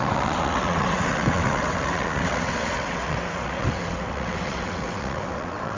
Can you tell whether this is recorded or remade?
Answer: remade